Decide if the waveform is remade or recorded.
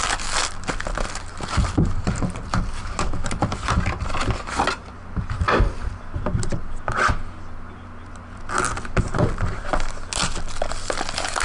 recorded